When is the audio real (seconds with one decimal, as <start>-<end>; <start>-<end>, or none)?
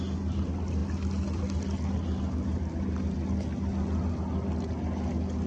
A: 0.0-5.5